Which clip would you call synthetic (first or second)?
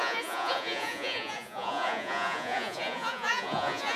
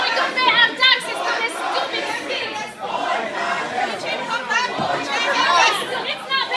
first